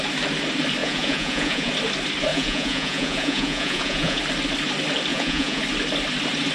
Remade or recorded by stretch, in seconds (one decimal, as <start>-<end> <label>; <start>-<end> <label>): 0.0-0.8 recorded; 0.8-1.7 remade; 1.7-2.3 recorded; 2.3-4.2 remade; 4.2-5.1 recorded; 5.1-5.6 remade; 5.6-6.5 recorded